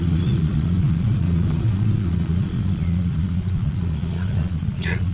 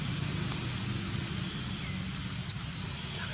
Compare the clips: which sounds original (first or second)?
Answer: second